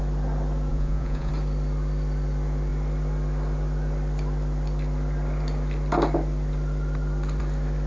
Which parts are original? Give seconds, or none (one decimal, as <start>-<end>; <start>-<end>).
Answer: 0.0-0.7; 1.3-7.9